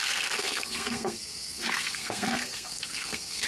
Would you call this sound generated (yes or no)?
yes